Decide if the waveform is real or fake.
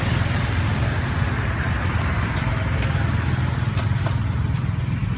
real